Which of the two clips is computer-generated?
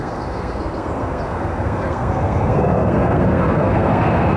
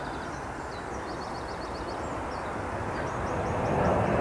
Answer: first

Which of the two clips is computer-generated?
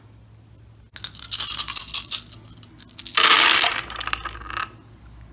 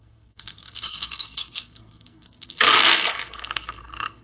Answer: second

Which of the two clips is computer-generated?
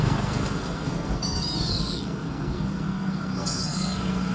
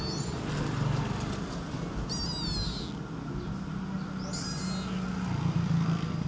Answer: first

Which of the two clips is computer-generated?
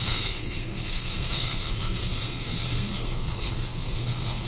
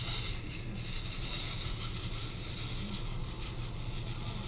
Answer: first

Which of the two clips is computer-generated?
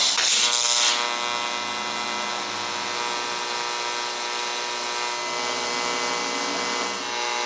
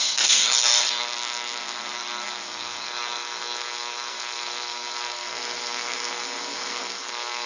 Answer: second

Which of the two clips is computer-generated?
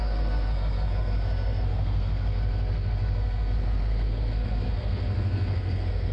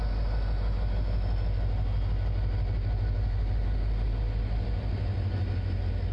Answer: first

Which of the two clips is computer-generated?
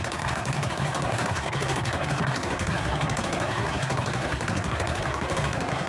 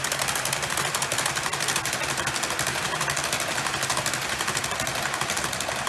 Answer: first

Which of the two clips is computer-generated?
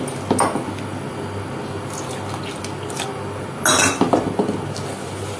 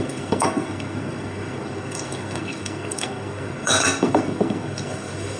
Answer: second